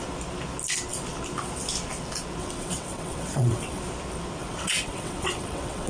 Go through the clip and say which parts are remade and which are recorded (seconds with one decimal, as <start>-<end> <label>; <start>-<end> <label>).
0.0-2.4 recorded; 2.4-3.8 remade; 3.8-4.4 recorded; 4.4-5.9 remade